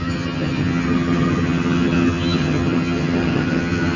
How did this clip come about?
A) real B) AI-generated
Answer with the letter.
B